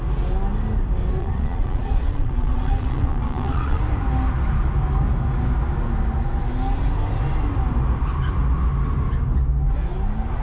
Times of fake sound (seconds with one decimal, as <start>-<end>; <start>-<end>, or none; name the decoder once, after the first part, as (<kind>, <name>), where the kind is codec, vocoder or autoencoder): 1.2-3.8 (vocoder, Vocos)

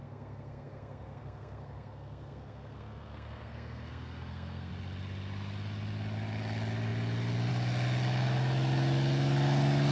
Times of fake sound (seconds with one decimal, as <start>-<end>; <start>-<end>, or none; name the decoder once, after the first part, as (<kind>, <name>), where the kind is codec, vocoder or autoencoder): 0.0-4.7 (codec, SNAC)